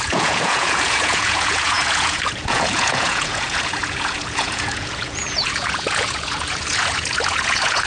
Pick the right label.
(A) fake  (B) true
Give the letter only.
A